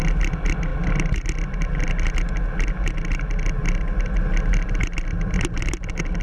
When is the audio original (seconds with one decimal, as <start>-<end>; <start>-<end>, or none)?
0.0-6.2

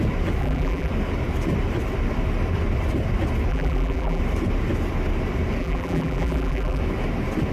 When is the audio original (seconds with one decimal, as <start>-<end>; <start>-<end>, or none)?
0.0-0.4; 0.9-3.5; 4.2-5.6; 6.8-7.5

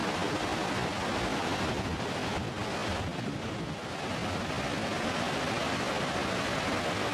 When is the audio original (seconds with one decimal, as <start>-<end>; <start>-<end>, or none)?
0.0-7.1

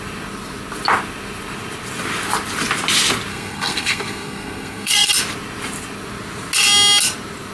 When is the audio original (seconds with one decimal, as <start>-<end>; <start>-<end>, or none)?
0.0-3.3; 5.1-7.5